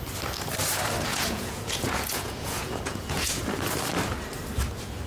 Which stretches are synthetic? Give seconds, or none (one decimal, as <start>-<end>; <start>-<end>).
1.1-3.4